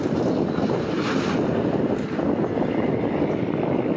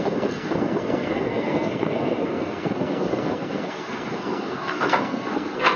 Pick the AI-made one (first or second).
second